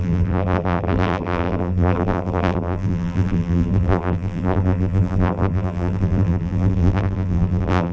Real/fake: fake